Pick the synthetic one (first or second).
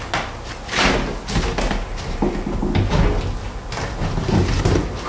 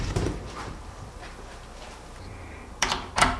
second